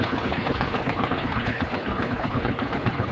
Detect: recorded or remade remade